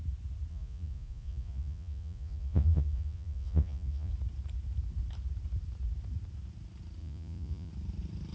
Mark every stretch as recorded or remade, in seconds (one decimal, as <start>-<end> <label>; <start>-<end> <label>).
0.0-0.5 recorded; 0.5-4.1 remade; 4.1-7.0 recorded; 7.0-7.7 remade; 7.7-8.3 recorded